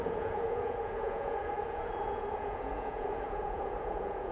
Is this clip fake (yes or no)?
yes